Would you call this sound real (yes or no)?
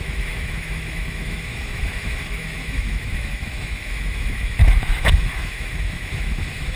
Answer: no